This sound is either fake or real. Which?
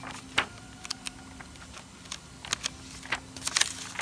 real